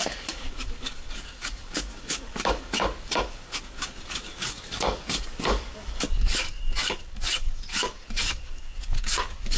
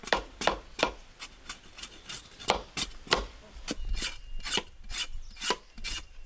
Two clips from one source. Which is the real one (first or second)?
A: second